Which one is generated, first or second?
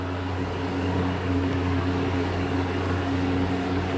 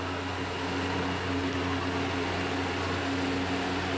first